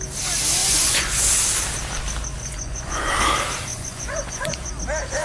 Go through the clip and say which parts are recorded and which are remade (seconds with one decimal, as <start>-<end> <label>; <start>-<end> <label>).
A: 0.0-0.6 recorded; 0.6-1.3 remade; 1.3-2.4 recorded; 2.4-3.1 remade; 3.1-3.7 recorded; 3.7-4.7 remade; 4.7-5.2 recorded